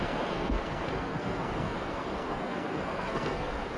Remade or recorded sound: remade